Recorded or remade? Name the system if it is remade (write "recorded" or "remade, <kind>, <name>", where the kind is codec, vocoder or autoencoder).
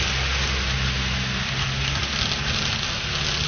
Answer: recorded